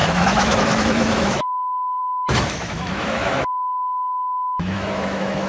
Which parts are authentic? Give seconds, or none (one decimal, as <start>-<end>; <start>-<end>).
none